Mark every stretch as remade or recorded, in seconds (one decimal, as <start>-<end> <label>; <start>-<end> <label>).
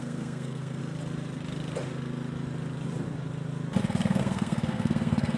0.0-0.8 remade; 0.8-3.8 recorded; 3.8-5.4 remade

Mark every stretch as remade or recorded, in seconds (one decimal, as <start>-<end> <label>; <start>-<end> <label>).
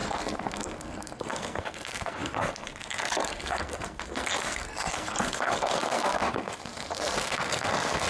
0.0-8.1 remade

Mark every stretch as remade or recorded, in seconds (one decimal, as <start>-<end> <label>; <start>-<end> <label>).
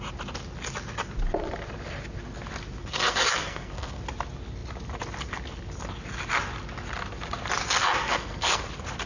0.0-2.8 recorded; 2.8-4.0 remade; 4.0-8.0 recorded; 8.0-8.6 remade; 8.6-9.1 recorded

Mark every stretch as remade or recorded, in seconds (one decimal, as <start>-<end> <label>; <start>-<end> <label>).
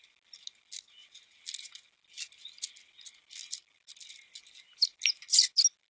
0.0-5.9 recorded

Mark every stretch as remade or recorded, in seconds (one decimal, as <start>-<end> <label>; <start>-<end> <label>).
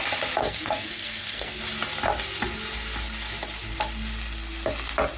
0.0-0.4 recorded; 0.4-1.6 remade; 1.6-5.2 recorded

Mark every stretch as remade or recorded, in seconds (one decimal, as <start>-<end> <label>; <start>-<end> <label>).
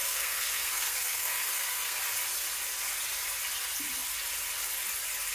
0.0-2.0 remade; 2.0-5.3 recorded